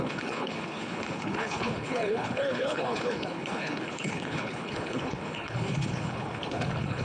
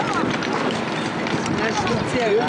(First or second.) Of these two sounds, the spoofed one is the first